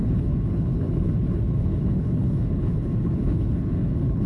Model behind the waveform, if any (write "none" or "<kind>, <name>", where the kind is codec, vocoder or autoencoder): codec, HILCodec